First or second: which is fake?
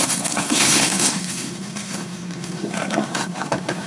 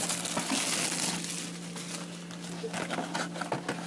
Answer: first